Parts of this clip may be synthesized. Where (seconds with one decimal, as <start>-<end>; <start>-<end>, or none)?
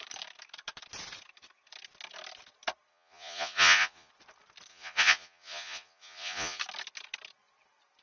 2.9-4.1; 4.7-6.6